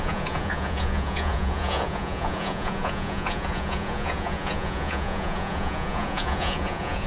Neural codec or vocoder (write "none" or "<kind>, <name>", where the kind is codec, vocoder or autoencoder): vocoder, Vocos